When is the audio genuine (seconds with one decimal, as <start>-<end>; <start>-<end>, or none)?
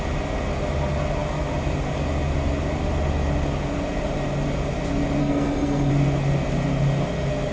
0.0-5.2; 5.9-7.5